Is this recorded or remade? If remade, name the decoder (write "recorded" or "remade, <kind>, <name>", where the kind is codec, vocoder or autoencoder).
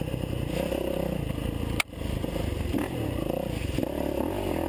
recorded